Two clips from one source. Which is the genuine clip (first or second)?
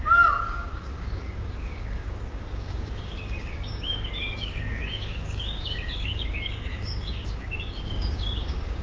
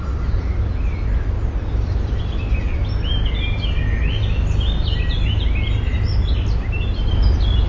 second